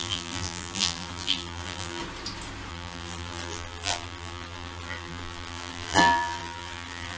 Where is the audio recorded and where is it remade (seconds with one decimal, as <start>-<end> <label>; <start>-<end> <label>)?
0.0-2.0 remade; 2.0-2.7 recorded; 2.7-7.2 remade